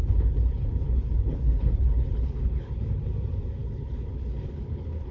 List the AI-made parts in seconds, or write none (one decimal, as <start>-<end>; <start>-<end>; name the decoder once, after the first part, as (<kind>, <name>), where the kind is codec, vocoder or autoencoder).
0.0-3.1 (codec, HILCodec); 3.6-5.1